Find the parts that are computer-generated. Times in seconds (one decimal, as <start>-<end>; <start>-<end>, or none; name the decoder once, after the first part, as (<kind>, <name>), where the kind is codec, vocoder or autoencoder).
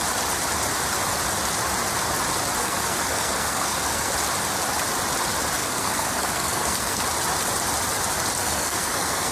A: 2.6-4.1 (codec, SNAC); 5.6-7.0; 8.4-9.3